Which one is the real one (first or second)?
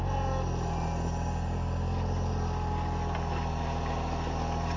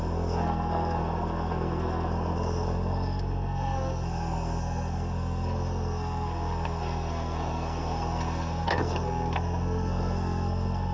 first